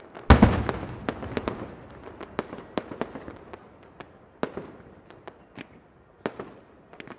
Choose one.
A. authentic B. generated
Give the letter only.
A